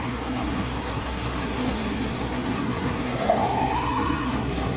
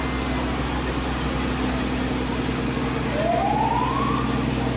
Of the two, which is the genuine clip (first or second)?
second